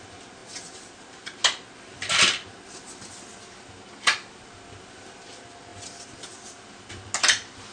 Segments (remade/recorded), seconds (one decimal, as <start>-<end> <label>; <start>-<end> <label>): 0.0-7.7 recorded